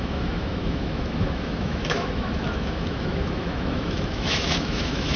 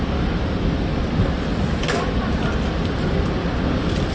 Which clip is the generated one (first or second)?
first